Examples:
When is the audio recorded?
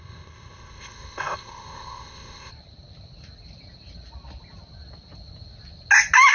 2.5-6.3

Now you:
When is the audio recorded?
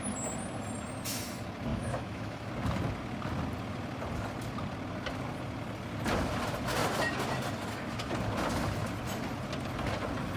0.0-1.7; 2.5-10.4